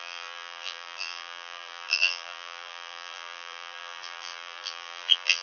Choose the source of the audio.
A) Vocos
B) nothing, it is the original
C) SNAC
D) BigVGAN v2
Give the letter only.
D